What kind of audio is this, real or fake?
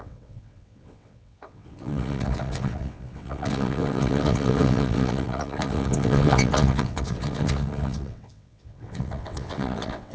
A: fake